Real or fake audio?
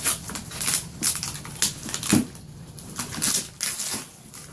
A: real